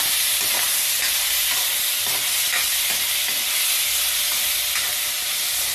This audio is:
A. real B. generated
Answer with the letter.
A